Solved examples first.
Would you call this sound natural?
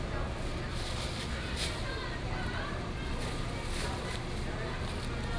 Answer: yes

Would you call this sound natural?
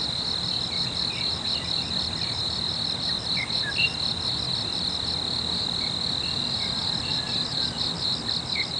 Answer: yes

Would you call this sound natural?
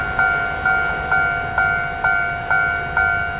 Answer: yes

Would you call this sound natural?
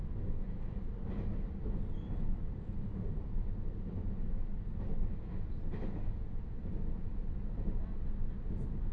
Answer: yes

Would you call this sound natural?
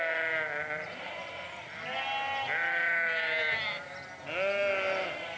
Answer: yes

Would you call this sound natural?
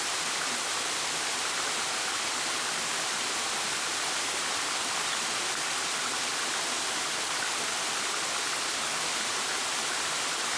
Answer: yes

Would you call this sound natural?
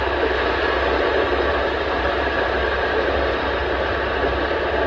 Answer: no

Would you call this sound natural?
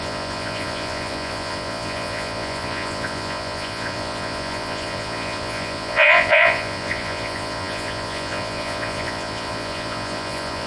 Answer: no